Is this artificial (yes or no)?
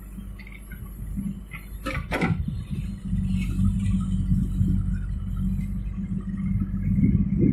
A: no